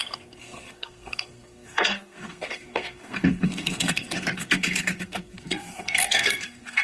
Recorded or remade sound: remade